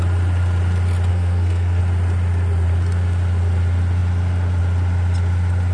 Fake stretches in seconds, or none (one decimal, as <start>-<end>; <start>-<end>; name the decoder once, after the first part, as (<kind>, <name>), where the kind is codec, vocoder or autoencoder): 1.1-1.8 (codec, SNAC)